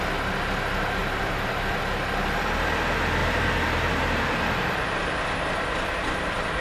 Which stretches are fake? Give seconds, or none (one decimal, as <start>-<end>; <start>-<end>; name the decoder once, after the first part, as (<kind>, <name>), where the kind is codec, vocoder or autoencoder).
1.0-1.8 (vocoder, BigVGAN v2); 3.2-4.2